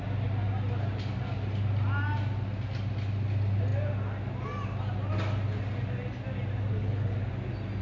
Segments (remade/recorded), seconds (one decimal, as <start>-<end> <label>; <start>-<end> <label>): 0.0-6.7 recorded; 6.7-7.3 remade; 7.3-7.8 recorded